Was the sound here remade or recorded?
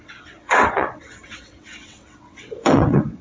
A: remade